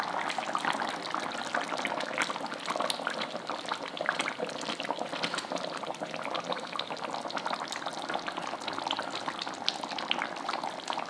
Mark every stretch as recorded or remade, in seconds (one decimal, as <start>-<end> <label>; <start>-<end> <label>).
0.0-11.1 recorded